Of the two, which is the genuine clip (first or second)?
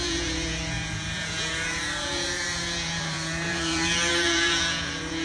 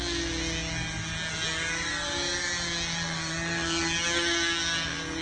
second